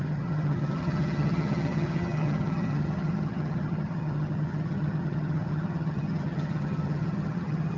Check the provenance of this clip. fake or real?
fake